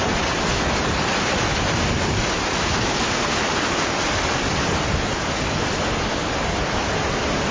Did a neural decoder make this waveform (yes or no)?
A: no